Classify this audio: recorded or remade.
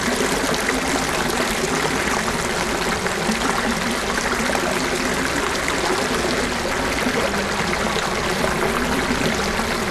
recorded